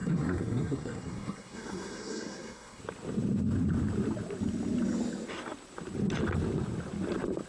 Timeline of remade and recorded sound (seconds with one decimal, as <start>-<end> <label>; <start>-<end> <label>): 0.0-2.8 remade; 2.8-7.5 recorded

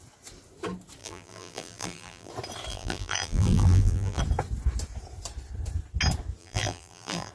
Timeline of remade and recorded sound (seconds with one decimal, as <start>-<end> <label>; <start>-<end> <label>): 0.0-1.0 recorded; 1.0-2.3 remade; 2.3-2.7 recorded; 2.7-4.2 remade; 4.2-6.4 recorded; 6.4-7.3 remade

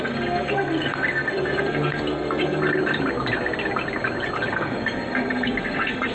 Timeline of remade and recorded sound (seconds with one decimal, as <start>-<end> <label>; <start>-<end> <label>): 0.0-2.6 remade; 2.6-4.5 recorded; 4.5-6.1 remade

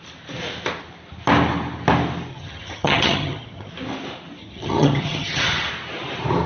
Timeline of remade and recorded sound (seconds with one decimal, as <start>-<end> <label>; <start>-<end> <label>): 0.0-2.3 recorded; 2.3-3.7 remade; 3.7-4.4 recorded; 4.4-5.7 remade; 5.7-6.5 recorded

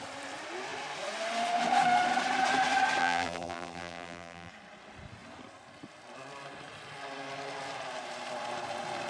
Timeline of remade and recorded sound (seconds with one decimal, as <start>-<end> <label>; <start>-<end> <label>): 0.0-3.0 recorded; 3.0-4.5 remade; 4.5-9.1 recorded

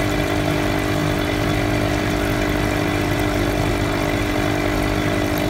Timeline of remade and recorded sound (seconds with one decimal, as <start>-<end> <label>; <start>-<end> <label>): 0.0-5.5 recorded

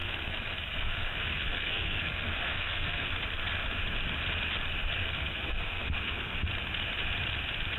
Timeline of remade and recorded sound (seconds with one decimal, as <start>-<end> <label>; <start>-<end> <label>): 0.0-3.1 remade; 3.1-5.0 recorded; 5.0-6.4 remade; 6.4-7.8 recorded

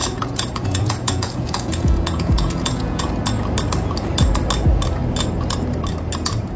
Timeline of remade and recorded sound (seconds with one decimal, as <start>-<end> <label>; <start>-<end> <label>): 0.0-3.1 remade; 3.1-6.6 recorded